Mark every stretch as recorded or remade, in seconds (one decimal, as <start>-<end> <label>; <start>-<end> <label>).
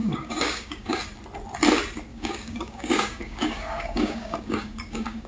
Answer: 0.0-1.0 remade; 1.0-2.1 recorded; 2.1-5.3 remade